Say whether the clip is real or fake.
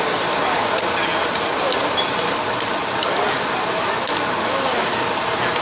real